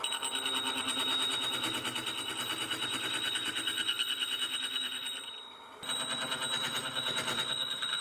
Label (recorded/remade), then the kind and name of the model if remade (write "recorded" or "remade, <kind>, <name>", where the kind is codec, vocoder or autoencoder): recorded